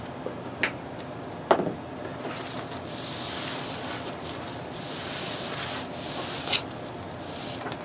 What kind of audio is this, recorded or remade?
recorded